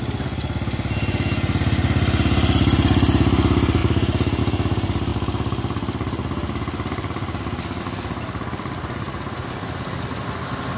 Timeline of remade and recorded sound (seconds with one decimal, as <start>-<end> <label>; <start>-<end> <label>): 0.0-10.8 recorded

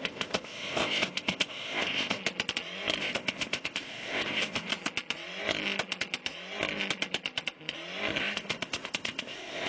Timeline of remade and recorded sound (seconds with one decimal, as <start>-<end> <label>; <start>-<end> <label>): 0.0-2.2 remade; 2.2-3.0 recorded; 3.0-4.7 remade; 4.7-8.2 recorded; 8.2-9.7 remade

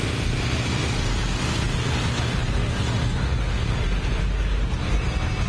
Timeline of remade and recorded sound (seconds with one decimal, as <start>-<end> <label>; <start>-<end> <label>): 0.0-5.5 recorded

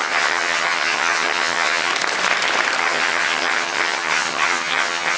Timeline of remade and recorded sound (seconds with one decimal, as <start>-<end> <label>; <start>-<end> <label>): 0.0-1.9 remade; 1.9-2.8 recorded; 2.8-5.2 remade

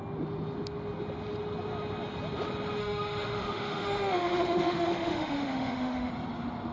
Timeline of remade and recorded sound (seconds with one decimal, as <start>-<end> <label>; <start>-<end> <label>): 0.0-2.8 recorded; 2.8-6.1 remade; 6.1-6.7 recorded

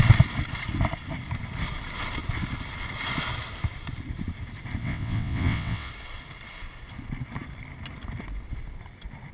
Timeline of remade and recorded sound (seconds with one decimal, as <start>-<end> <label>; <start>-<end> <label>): 0.0-4.8 recorded; 4.8-5.9 remade; 5.9-9.3 recorded

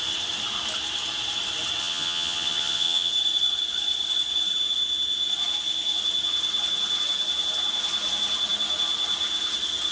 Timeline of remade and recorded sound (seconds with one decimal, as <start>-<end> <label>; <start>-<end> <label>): 0.0-1.8 recorded; 1.8-3.1 remade; 3.1-9.9 recorded